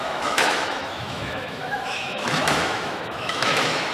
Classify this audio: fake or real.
fake